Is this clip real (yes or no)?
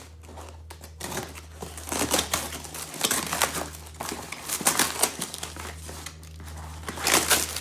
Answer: yes